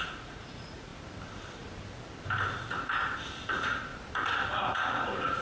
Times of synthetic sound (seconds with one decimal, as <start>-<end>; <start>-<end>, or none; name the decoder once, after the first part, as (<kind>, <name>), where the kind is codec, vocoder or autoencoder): 0.0-0.9 (vocoder, Vocos); 3.5-3.9; 4.5-5.4